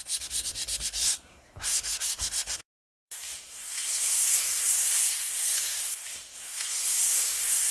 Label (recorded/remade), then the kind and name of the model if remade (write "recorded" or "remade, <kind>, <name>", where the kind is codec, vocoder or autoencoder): remade, codec, SNAC